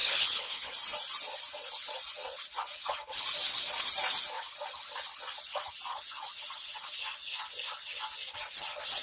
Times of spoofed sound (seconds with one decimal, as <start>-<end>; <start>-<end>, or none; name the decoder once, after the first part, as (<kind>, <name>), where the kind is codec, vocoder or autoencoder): 0.0-0.7 (codec, HILCodec)